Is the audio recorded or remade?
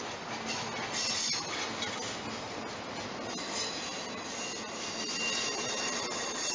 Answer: recorded